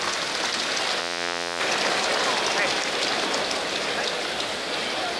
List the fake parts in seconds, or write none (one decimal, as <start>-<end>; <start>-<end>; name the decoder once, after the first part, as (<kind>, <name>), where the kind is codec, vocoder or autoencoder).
1.0-1.6 (vocoder, Vocos)